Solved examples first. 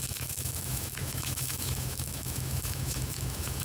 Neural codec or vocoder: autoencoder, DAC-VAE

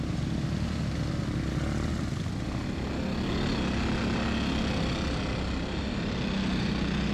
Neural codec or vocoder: none